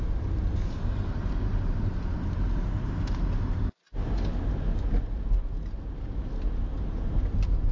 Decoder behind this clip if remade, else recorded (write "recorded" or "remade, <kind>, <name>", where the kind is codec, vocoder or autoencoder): recorded